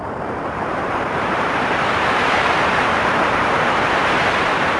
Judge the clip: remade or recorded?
remade